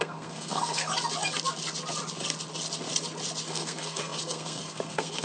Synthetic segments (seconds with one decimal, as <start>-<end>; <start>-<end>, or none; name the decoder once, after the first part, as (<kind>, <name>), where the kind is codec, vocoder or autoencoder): 0.0-0.9 (codec, SNAC); 3.5-5.2